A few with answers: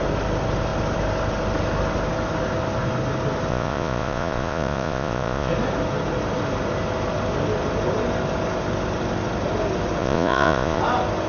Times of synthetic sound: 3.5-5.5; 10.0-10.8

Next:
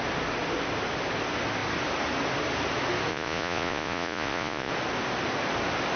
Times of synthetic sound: 3.1-4.7

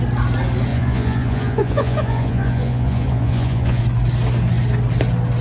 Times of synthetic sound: 0.7-3.8